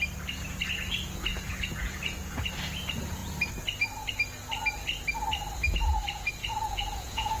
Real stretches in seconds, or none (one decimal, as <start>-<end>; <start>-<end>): 0.0-1.3; 2.5-6.4